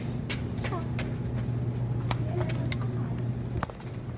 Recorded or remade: recorded